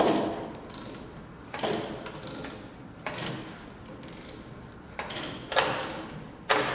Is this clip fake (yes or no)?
no